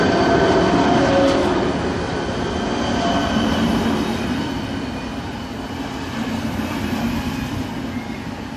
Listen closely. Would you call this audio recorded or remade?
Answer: recorded